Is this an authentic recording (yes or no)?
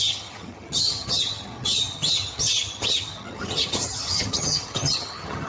no